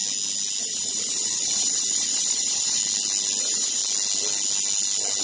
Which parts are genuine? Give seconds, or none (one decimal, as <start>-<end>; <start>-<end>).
0.0-0.6; 2.8-3.4; 3.8-5.2

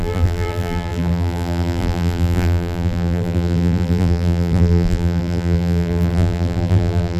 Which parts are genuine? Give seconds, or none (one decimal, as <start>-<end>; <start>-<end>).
none

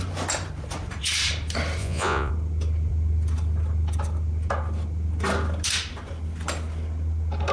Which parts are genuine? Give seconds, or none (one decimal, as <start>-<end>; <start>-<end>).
0.0-1.8; 2.3-7.5

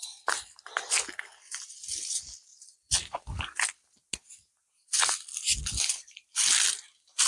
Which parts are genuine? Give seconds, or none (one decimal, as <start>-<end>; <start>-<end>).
2.5-5.6